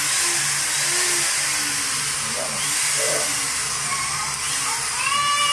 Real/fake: real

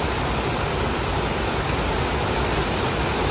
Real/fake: real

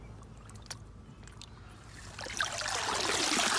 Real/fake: real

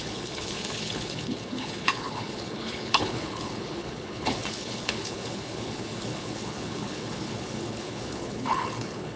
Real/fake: fake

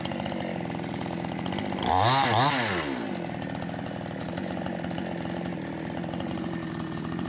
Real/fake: real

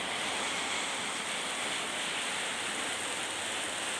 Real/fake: real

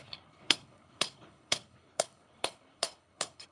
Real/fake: fake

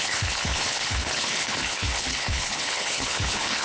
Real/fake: fake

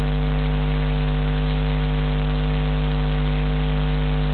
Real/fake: real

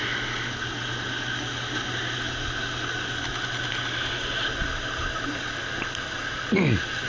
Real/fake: real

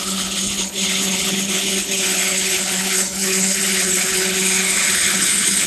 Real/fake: fake